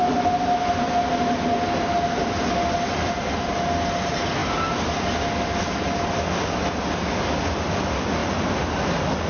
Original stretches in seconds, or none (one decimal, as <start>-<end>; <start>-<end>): 0.0-9.3